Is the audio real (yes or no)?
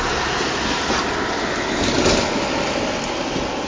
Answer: yes